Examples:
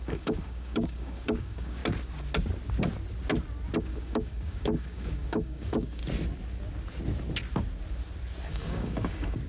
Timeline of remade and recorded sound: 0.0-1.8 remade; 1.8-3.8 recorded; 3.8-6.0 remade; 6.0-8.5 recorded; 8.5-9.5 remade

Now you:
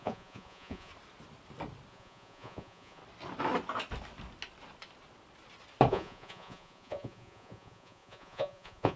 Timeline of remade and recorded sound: 0.0-0.9 remade; 0.9-1.9 recorded; 1.9-3.0 remade; 3.0-5.9 recorded; 5.9-9.0 remade

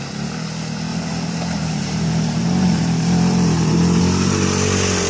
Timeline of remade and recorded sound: 0.0-0.9 recorded; 0.9-4.0 remade; 4.0-5.1 recorded

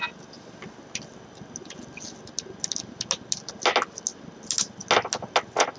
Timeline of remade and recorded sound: 0.0-5.8 recorded

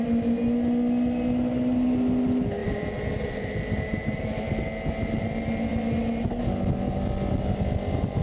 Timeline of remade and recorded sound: 0.0-2.6 recorded; 2.6-4.5 remade; 4.5-8.2 recorded